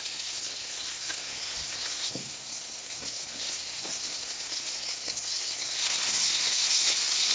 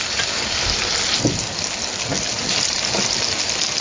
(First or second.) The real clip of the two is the second